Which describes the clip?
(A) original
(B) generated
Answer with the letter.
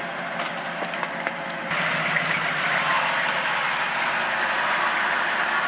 A